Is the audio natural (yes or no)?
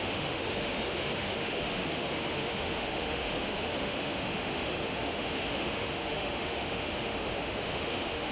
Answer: no